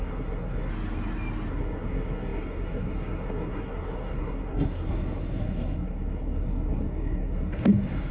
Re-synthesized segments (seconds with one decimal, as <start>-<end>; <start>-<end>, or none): 0.0-0.7; 1.5-8.1